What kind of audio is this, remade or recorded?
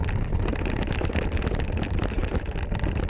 recorded